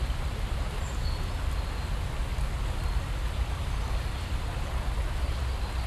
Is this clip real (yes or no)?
yes